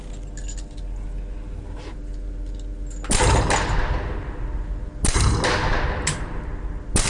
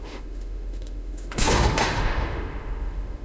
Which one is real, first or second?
first